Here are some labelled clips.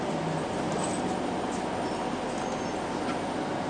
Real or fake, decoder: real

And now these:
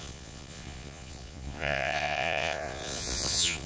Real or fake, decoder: fake, vocoder, Vocos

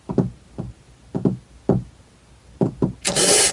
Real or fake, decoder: real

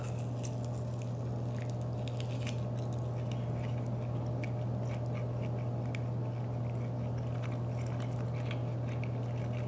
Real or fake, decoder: real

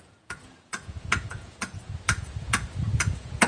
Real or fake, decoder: fake, vocoder, Vocos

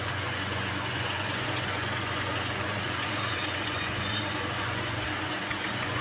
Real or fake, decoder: fake, vocoder, Vocos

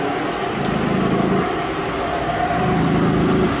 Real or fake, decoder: real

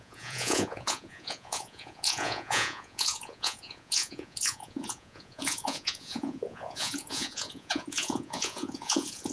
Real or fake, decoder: fake, vocoder, Vocos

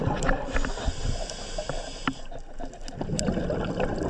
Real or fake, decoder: real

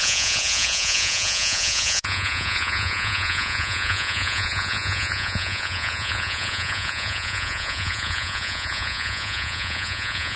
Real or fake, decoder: fake, vocoder, Vocos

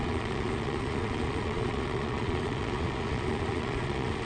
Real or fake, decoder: fake, vocoder, Vocos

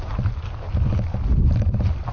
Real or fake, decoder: real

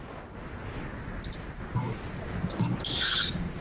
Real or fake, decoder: real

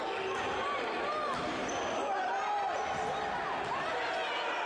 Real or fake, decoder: real